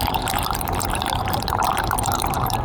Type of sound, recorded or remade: remade